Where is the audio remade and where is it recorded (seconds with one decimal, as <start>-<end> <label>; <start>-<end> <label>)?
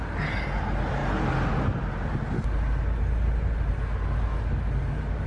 0.0-5.3 recorded